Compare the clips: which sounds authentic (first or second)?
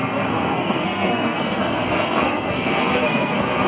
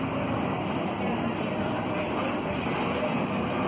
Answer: second